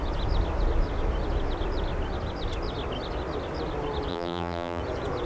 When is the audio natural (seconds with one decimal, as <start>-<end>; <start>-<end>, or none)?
0.0-4.1; 4.8-5.3